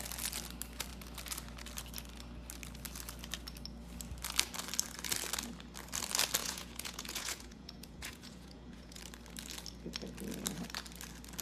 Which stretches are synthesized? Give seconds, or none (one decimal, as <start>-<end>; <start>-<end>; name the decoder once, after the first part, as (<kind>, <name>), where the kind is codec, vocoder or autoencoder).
6.4-9.0 (vocoder, Vocos)